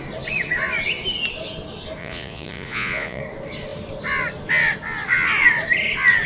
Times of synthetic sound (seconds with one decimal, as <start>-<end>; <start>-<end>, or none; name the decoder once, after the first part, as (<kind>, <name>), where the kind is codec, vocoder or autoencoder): 2.0-3.2 (vocoder, Vocos)